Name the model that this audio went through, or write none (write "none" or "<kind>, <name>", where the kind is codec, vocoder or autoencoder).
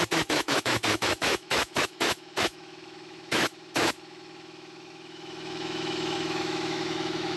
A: autoencoder, DAC-VAE